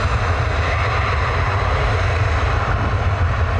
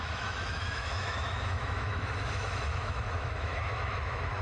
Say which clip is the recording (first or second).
first